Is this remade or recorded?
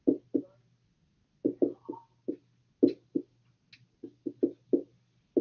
recorded